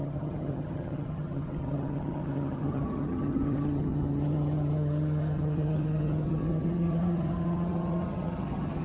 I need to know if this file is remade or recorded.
remade